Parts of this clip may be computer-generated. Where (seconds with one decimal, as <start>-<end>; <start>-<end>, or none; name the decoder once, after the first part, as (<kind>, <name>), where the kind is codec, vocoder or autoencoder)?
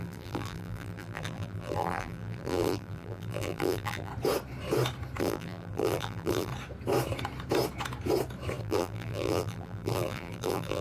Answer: 0.0-4.1 (vocoder, BigVGAN v2); 5.2-6.5; 8.6-10.8